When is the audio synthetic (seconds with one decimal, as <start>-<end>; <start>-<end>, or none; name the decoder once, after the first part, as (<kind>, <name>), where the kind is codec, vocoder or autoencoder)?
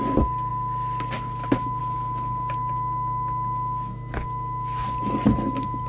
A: none